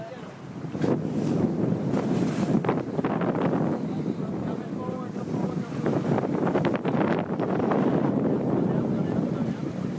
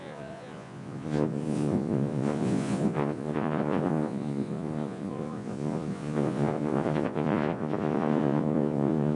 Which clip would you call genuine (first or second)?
first